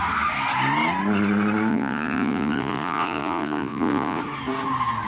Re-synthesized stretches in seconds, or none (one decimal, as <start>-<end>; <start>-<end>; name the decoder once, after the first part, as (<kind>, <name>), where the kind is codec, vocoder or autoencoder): 1.7-4.2 (vocoder, Vocos)